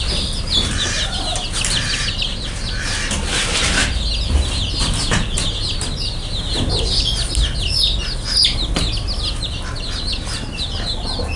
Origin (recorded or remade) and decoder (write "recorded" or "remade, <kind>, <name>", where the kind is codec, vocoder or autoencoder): recorded